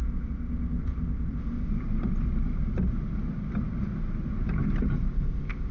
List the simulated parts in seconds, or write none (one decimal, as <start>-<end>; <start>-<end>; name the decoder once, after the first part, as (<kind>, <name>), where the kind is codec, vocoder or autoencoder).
0.0-1.7 (codec, ZipCodec); 5.1-5.7